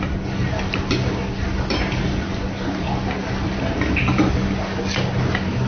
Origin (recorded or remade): recorded